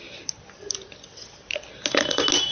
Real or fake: real